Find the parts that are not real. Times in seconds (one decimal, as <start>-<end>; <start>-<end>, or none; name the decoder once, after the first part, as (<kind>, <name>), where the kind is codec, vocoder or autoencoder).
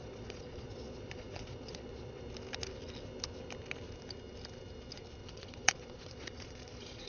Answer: 0.0-2.2 (vocoder, Vocos); 5.2-7.1